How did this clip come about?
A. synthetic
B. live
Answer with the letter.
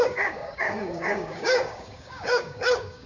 A